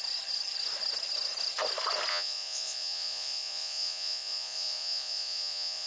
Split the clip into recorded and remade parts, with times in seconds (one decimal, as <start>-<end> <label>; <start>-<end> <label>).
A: 0.0-2.1 recorded; 2.1-5.9 remade